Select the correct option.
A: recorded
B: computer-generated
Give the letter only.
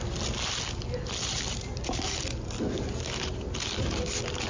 A